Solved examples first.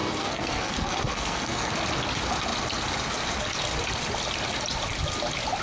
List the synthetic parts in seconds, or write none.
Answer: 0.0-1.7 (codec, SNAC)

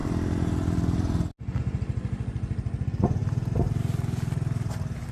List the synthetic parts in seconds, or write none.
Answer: none

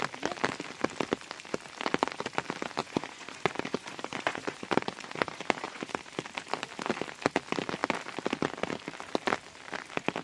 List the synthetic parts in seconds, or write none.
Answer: 2.8-5.9 (vocoder, Vocos)

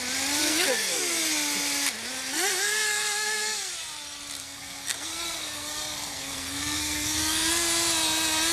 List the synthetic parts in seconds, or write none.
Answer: 0.4-1.0 (codec, SNAC); 2.3-3.7; 4.4-7.5

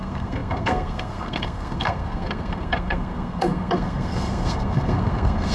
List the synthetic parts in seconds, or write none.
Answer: 0.0-5.5 (codec, SNAC)